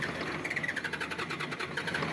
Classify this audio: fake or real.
real